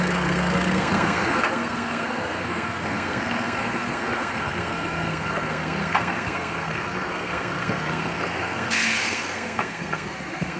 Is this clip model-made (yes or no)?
yes